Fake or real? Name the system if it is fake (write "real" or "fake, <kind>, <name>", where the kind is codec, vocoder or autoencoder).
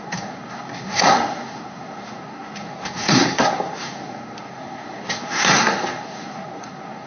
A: fake, codec, SNAC